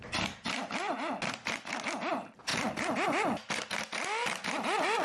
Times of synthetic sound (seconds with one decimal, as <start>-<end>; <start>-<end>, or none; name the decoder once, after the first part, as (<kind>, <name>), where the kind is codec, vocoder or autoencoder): none